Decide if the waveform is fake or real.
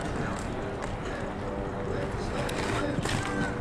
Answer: real